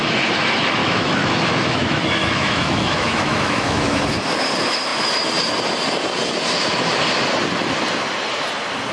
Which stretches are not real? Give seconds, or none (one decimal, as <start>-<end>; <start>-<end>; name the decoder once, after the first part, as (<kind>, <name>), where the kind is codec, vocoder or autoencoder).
0.8-4.0 (autoencoder, DAC-VAE)